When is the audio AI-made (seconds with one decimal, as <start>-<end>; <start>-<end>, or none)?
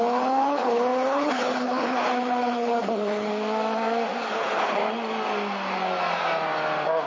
0.0-3.3; 4.3-4.8